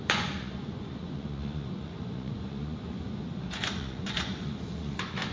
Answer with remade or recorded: remade